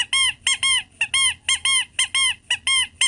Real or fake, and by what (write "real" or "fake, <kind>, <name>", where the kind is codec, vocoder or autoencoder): real